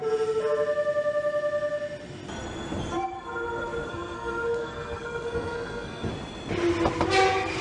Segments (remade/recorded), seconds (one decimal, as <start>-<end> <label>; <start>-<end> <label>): 0.0-3.9 recorded; 3.9-6.1 remade; 6.1-7.6 recorded